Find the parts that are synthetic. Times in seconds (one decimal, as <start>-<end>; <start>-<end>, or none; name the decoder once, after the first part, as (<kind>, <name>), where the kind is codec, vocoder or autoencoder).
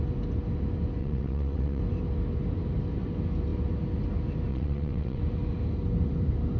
1.0-1.8 (vocoder, WaveNeXt); 4.5-5.2